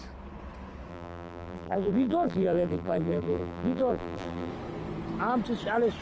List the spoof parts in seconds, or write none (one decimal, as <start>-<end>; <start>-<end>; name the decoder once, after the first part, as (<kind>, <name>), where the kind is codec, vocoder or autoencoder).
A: 0.9-4.5 (vocoder, BigVGAN v2)